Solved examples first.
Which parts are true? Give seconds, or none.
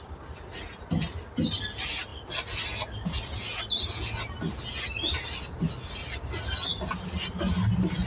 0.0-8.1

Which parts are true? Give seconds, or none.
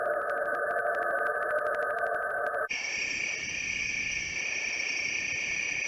none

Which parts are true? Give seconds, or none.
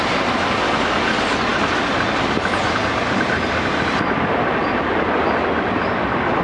0.0-6.4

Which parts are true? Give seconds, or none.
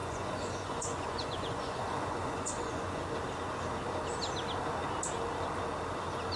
3.0-6.4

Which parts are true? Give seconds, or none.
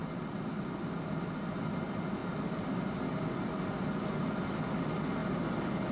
0.0-5.9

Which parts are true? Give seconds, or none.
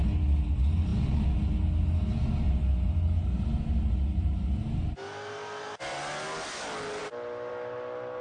0.0-8.2